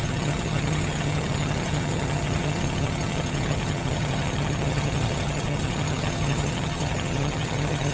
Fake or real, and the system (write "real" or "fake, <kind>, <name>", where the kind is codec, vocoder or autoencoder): fake, vocoder, HiFi-GAN